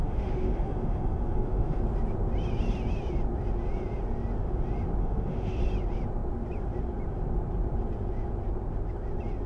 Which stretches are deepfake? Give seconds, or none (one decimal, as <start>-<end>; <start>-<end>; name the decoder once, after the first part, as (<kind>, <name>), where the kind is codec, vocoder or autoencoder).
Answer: 0.0-1.8 (autoencoder, DAC-VAE); 5.0-5.6